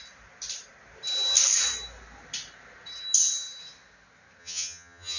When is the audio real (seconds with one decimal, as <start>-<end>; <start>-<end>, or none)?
0.0-4.4